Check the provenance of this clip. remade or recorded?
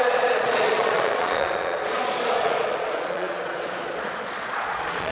remade